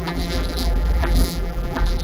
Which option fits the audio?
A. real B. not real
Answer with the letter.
B